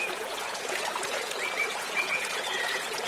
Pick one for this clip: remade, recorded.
remade